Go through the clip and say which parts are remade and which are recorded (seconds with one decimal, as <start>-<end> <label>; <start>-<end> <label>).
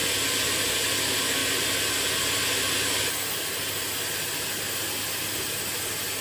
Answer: 0.0-6.2 recorded